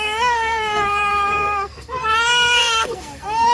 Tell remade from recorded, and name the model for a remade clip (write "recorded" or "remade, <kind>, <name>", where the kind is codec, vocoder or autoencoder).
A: remade, codec, SNAC